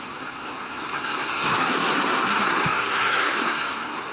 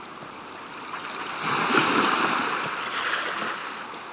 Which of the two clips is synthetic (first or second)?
first